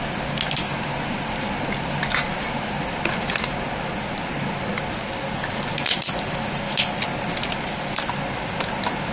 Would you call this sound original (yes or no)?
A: yes